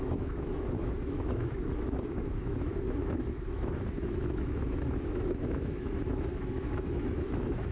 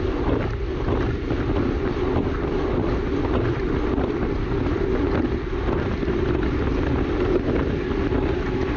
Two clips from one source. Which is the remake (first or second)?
first